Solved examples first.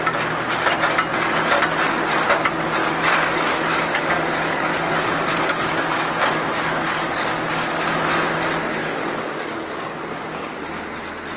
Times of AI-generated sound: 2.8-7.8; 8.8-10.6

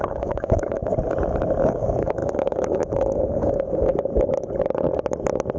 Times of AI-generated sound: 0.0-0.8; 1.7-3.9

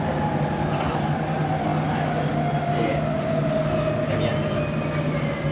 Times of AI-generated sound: none

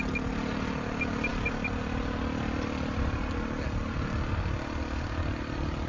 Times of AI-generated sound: none

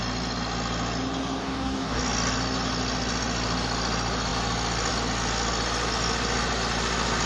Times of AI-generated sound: 1.4-2.0

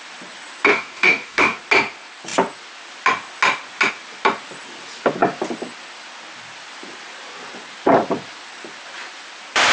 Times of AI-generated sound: 0.7-1.6